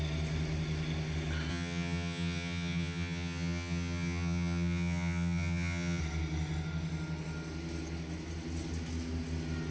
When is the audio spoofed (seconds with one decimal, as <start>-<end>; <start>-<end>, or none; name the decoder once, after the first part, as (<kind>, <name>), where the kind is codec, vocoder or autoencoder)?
1.5-6.0 (vocoder, HiFi-GAN)